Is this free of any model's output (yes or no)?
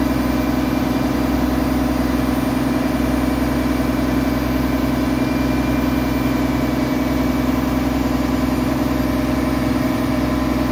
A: yes